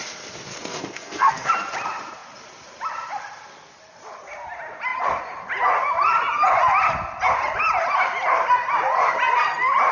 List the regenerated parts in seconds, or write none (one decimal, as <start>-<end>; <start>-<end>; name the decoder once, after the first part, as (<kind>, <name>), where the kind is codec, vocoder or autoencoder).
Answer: 0.5-1.5 (codec, SNAC)

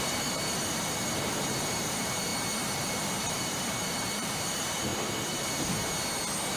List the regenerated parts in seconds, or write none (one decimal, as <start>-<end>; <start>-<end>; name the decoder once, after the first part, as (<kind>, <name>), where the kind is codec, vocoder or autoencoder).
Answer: 0.0-4.9 (vocoder, BigVGAN v2)